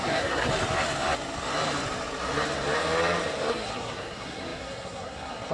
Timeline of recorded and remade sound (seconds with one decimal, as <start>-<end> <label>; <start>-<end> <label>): 0.0-0.5 remade; 0.5-3.5 recorded; 3.5-5.5 remade